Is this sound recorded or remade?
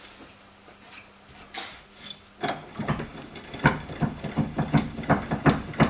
recorded